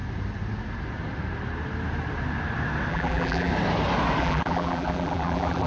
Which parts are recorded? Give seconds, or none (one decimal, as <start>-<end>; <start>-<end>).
0.0-2.9; 3.5-4.2